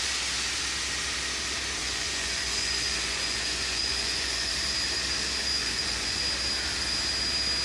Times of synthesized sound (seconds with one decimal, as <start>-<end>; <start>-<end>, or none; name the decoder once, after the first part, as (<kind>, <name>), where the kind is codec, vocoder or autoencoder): 1.8-4.5 (vocoder, Vocos); 5.6-6.2